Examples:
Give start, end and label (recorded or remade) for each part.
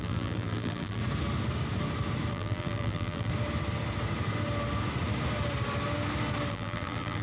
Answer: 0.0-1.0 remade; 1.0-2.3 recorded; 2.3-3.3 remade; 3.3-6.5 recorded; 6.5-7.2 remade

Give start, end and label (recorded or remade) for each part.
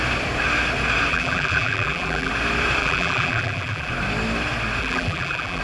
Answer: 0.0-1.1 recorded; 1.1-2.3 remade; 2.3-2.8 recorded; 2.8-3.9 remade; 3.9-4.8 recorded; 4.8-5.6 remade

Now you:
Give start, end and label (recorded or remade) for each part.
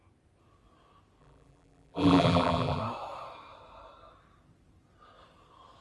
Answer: 0.0-1.2 recorded; 1.2-2.8 remade; 2.8-5.8 recorded